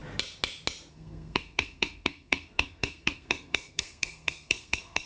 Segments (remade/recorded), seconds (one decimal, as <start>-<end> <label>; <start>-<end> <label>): 0.0-0.9 recorded; 0.9-5.1 remade